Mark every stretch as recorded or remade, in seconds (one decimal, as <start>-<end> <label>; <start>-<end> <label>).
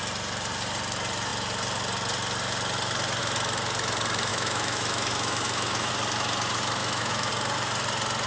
0.0-4.3 recorded; 4.3-5.9 remade; 5.9-6.8 recorded; 6.8-7.3 remade; 7.3-8.3 recorded